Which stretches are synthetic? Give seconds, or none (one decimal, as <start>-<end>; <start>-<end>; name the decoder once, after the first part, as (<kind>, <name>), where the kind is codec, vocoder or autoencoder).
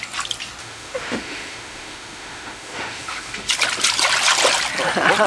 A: 0.6-3.5 (autoencoder, DAC-VAE)